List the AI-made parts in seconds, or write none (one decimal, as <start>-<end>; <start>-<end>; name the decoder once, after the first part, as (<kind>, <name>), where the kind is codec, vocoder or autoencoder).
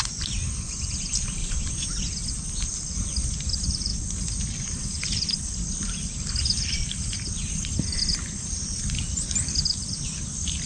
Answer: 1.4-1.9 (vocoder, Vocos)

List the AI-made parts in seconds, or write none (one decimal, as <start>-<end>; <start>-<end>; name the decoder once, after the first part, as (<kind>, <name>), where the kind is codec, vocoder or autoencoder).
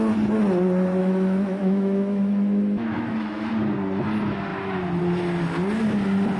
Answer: 1.0-3.5 (autoencoder, DAC-VAE)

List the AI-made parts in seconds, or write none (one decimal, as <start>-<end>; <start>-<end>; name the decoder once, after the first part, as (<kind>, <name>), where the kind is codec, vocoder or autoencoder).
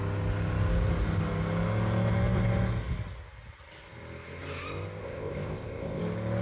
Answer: 5.0-6.0 (codec, ZipCodec)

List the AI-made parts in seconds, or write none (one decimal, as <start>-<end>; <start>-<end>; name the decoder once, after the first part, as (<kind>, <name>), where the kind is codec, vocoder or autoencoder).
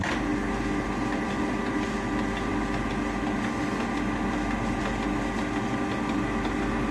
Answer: none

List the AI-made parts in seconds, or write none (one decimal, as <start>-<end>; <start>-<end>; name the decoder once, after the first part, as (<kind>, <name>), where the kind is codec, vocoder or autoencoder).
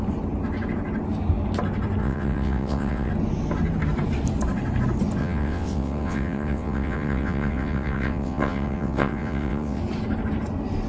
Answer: 2.0-3.1 (vocoder, WaveNeXt); 5.2-9.8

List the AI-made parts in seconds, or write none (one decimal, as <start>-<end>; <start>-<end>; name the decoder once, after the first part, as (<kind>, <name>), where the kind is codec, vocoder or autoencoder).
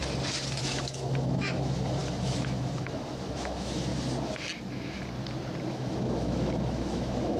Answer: 0.6-3.9 (autoencoder, DAC-VAE); 5.7-7.4